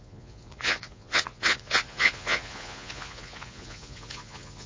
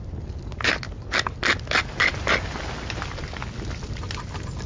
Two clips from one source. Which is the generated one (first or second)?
first